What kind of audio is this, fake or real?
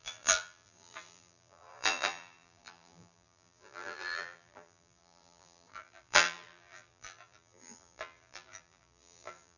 fake